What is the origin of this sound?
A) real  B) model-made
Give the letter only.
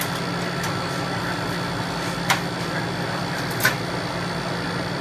A